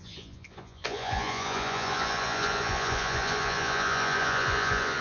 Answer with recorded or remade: remade